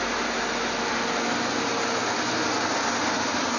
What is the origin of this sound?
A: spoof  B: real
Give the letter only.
B